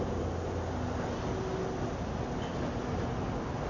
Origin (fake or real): real